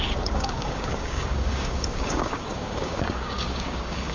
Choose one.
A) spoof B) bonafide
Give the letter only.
A